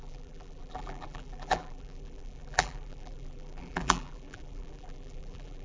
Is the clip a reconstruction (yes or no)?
yes